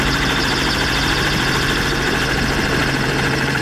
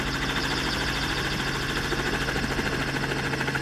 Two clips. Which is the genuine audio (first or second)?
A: second